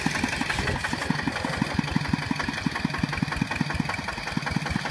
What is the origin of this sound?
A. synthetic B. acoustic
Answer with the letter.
B